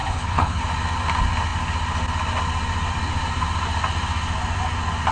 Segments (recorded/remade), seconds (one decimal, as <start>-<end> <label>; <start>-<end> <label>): 0.0-0.6 remade; 0.6-5.1 recorded